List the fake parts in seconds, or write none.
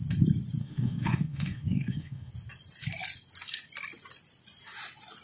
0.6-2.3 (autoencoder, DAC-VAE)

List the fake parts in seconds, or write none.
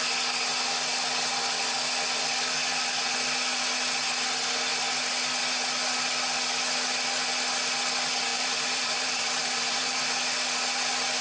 8.3-10.0 (vocoder, BigVGAN v2)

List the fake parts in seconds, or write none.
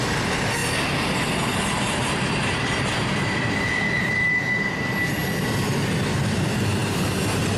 none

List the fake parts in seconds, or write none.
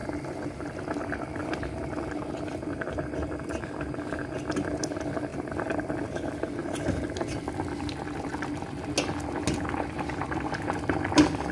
none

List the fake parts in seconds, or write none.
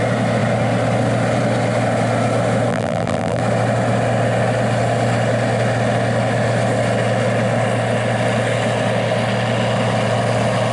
2.7-3.4 (vocoder, BigVGAN v2)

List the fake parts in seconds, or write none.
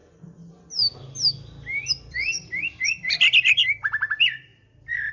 1.9-5.1 (vocoder, BigVGAN v2)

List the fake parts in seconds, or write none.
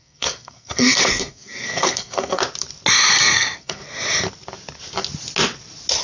0.0-2.4 (codec, SNAC); 3.2-3.8